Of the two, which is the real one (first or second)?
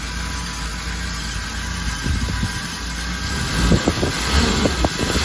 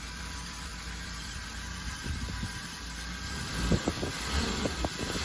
first